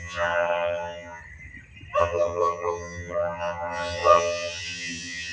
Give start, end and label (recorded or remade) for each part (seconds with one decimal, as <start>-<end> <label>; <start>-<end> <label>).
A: 0.0-1.2 remade; 1.2-2.0 recorded; 2.0-5.3 remade